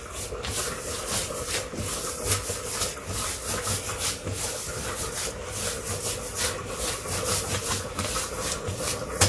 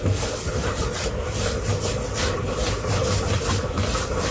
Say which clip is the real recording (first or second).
first